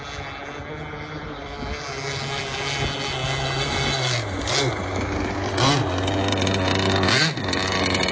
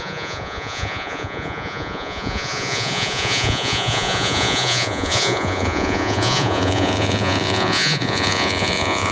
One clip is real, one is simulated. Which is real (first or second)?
first